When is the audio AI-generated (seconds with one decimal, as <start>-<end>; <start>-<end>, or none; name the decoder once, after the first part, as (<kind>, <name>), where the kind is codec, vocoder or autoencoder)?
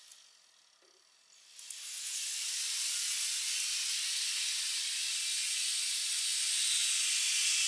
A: none